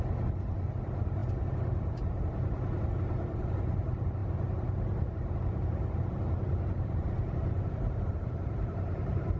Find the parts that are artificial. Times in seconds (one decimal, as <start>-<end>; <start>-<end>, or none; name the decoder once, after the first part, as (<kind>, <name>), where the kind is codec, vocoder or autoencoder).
0.0-9.4 (vocoder, BigVGAN v2)